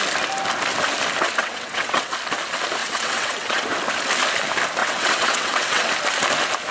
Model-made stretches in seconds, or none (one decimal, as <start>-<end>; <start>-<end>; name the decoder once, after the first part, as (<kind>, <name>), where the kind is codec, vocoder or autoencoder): 1.4-2.1 (vocoder, WaveNeXt); 2.8-3.7; 4.8-5.9